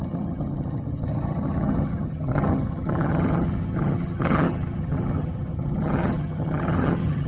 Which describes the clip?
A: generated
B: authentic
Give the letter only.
A